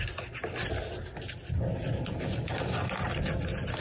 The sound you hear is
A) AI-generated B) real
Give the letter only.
B